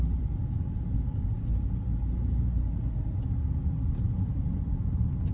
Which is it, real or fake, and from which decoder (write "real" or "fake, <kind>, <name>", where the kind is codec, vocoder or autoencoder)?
real